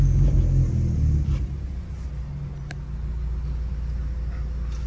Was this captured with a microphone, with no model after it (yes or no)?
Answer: yes